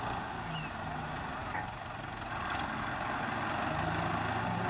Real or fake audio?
real